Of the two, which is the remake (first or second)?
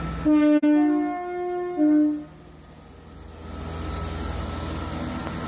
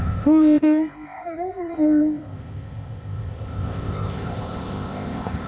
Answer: second